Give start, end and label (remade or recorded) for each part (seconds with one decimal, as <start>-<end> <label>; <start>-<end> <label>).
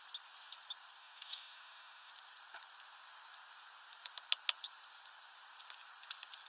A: 0.0-1.0 recorded; 1.0-2.1 remade; 2.1-6.5 recorded